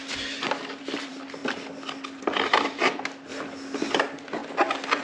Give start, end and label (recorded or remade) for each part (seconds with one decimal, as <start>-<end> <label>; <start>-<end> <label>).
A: 0.0-0.8 recorded; 0.8-1.4 remade; 1.4-2.2 recorded; 2.2-3.3 remade; 3.3-4.0 recorded; 4.0-4.4 remade; 4.4-5.0 recorded